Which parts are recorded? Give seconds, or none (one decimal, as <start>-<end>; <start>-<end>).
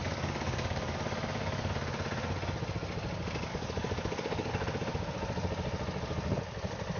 1.7-3.5; 4.5-7.0